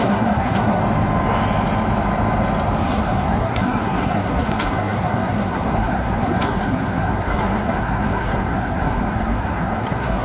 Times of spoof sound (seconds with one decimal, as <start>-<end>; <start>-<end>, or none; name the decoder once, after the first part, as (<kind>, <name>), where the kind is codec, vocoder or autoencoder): 0.0-0.8 (codec, SNAC); 2.8-10.2